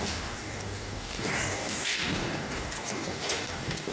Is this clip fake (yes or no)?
yes